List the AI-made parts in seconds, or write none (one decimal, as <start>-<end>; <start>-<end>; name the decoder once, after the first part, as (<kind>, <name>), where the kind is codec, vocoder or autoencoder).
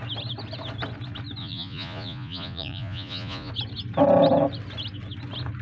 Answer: 1.4-3.5 (vocoder, Vocos)